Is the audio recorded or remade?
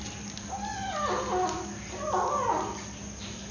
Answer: recorded